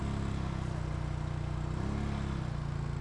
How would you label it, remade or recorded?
recorded